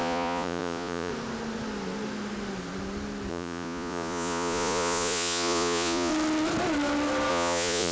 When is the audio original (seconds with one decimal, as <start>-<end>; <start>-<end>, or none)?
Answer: 1.1-3.3; 6.1-7.3